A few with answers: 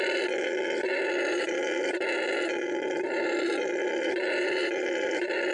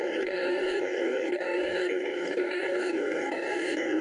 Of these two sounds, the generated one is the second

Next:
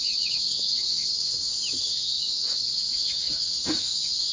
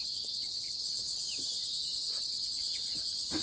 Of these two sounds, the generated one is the first